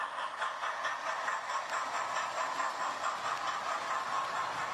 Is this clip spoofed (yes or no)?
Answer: no